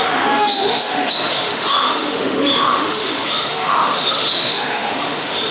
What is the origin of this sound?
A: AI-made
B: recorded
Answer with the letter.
A